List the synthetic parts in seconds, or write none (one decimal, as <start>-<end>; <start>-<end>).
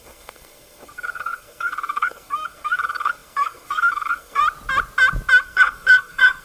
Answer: 0.0-4.4; 5.4-6.4